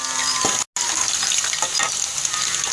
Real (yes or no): yes